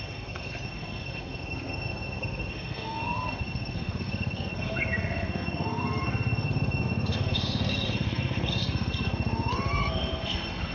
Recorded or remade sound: remade